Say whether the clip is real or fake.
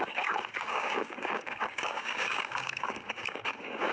fake